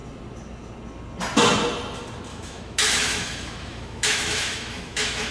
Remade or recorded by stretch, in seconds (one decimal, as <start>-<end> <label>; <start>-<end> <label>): 0.0-2.3 recorded; 2.3-5.3 remade